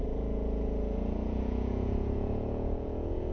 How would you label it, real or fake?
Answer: fake